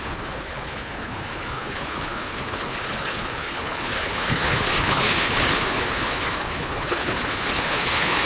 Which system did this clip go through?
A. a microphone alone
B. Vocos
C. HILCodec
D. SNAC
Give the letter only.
C